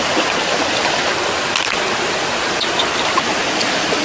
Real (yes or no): yes